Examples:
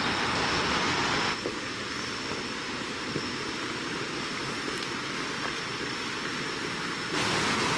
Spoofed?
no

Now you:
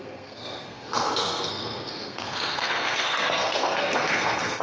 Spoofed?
yes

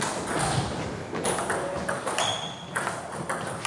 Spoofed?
no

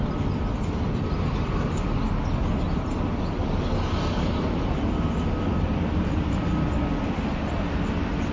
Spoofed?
no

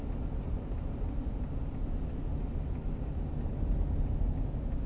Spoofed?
no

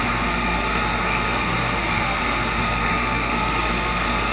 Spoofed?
yes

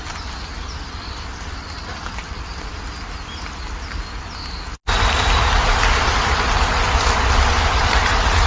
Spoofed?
no